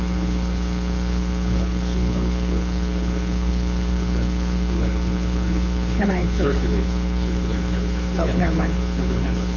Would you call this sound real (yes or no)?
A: no